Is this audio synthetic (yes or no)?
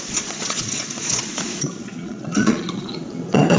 yes